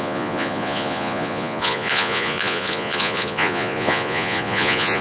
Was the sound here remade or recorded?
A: remade